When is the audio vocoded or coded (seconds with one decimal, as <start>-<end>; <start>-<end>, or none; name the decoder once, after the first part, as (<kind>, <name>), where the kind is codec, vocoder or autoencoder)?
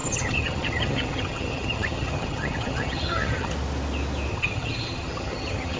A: 0.0-3.5 (vocoder, HiFi-GAN); 4.3-5.8